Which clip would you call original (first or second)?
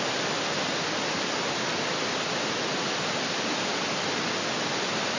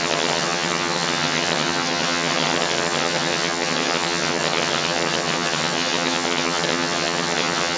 first